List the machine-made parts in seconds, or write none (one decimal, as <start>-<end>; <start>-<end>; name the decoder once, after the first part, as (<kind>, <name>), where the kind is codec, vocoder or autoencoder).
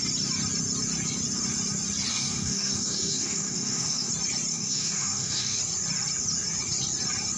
2.1-4.1 (codec, DAC); 4.5-5.6